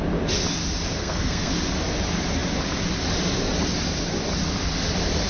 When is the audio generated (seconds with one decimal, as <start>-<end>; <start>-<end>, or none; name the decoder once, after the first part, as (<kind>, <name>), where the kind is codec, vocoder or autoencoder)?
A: 1.0-1.5 (codec, SNAC)